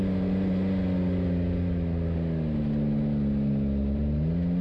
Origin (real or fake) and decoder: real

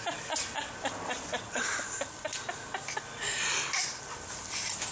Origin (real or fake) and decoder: real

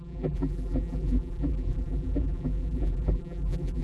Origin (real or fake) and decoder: fake, vocoder, BigVGAN v2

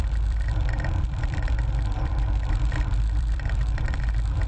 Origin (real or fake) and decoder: fake, vocoder, BigVGAN v2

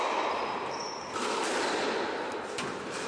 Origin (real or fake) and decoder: real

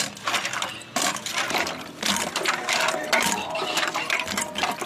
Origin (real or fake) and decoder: real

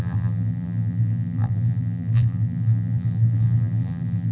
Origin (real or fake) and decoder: fake, vocoder, BigVGAN v2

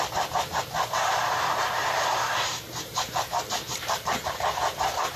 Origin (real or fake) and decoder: fake, vocoder, BigVGAN v2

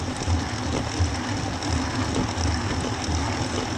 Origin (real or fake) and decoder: real